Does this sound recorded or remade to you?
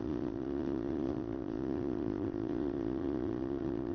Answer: remade